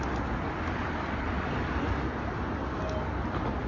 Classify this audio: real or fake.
real